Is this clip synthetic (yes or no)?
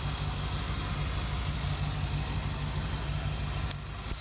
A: no